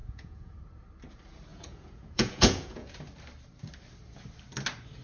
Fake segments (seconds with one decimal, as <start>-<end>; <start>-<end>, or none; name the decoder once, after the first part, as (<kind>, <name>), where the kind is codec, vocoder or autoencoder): 0.0-0.5 (vocoder, Vocos); 1.5-3.0